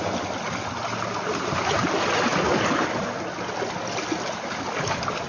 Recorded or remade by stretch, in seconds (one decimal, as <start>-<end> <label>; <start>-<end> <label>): 0.0-5.3 recorded